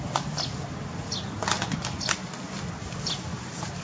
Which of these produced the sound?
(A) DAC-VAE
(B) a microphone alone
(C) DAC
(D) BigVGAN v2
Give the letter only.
B